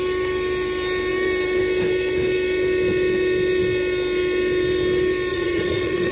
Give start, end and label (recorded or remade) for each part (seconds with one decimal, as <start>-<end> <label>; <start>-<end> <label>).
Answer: 0.0-5.3 recorded; 5.3-6.1 remade